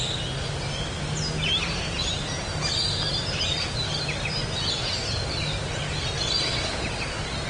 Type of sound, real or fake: real